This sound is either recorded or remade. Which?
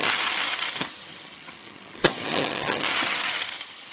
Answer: remade